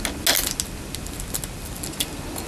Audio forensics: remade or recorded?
recorded